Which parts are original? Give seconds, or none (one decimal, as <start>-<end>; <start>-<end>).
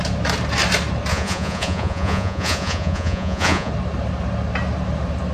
0.0-1.1; 3.7-5.3